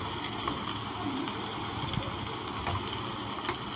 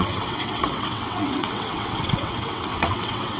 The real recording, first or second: first